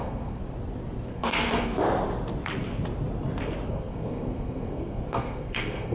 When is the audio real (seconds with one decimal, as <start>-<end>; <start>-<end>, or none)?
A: 0.4-1.1; 1.8-3.7